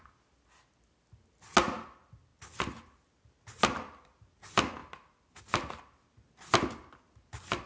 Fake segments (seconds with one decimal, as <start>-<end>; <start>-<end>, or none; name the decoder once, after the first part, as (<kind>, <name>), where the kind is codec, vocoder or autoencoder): none